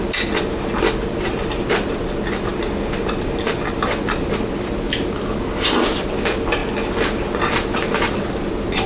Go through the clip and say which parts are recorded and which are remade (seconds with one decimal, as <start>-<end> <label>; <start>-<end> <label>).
0.0-8.9 recorded